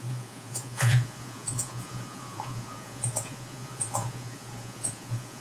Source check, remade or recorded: remade